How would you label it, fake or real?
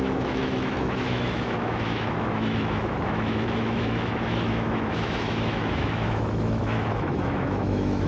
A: fake